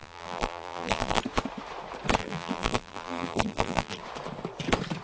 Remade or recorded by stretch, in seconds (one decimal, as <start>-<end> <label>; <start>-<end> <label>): 0.0-1.2 remade; 1.2-2.2 recorded; 2.2-4.0 remade; 4.0-5.0 recorded